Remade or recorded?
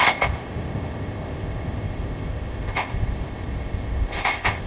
remade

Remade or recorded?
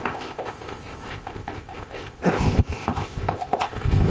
remade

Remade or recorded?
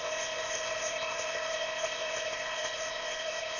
remade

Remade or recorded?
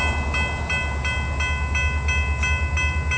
recorded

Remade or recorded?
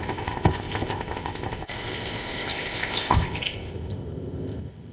remade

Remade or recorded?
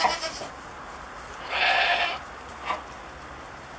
recorded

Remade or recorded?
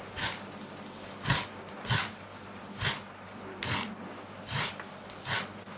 recorded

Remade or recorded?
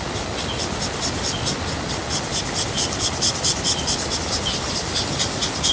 recorded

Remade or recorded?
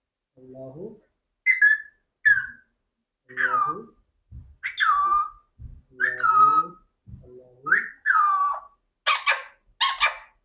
recorded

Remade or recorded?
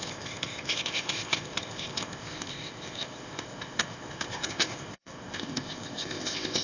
remade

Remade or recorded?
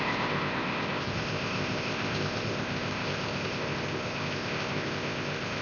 remade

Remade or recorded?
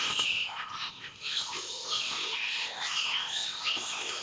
remade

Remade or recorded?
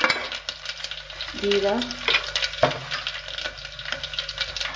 recorded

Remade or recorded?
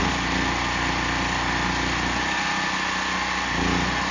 recorded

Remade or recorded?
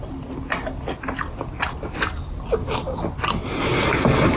recorded